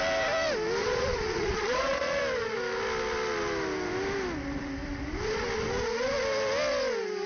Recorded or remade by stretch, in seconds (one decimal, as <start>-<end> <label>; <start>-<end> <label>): 0.0-0.8 recorded; 0.8-2.2 remade; 2.2-7.3 recorded